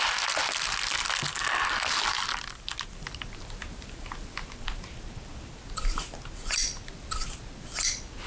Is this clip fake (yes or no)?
no